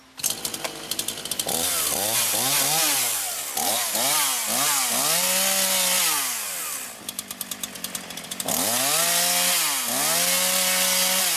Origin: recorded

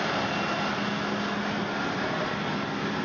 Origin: recorded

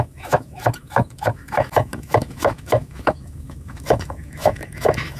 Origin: remade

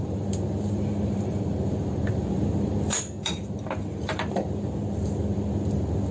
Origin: remade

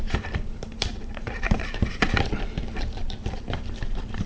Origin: remade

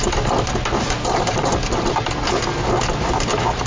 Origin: recorded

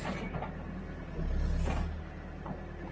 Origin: recorded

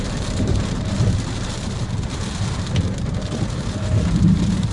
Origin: remade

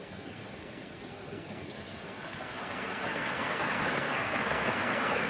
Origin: remade